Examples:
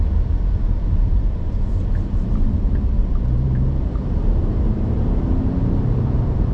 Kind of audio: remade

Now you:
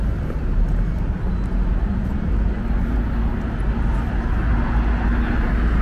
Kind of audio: recorded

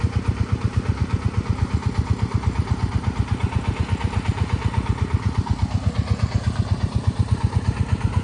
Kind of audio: recorded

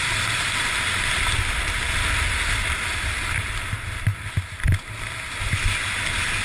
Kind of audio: recorded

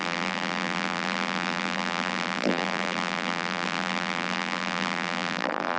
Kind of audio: remade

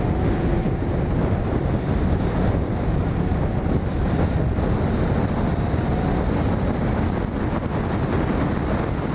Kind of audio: recorded